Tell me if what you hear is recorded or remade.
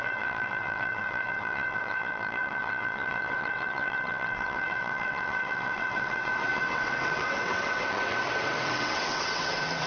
remade